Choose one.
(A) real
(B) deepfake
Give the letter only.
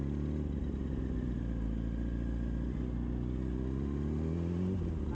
A